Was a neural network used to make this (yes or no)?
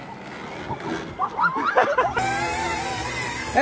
no